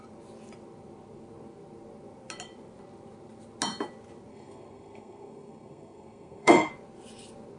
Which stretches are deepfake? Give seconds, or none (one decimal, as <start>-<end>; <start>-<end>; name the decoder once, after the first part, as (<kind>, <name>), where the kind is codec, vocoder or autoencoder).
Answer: 4.3-6.7 (codec, SNAC)